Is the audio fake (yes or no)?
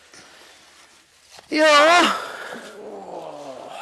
no